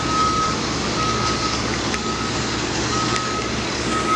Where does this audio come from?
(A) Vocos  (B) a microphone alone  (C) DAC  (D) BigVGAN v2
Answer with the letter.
C